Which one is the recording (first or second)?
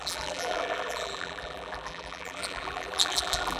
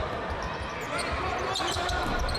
second